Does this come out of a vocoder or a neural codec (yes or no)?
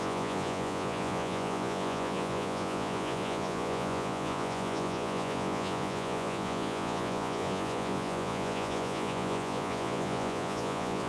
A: yes